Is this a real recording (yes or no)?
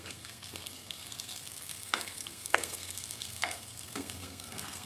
no